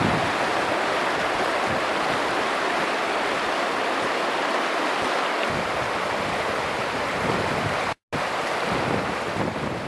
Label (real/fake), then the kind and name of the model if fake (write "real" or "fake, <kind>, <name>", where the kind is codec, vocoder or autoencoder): real